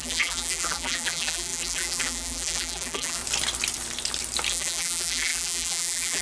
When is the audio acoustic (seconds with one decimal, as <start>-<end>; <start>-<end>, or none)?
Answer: 3.2-4.5